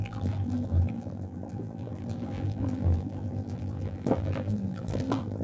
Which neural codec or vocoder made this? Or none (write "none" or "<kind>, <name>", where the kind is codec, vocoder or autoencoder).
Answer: vocoder, BigVGAN v2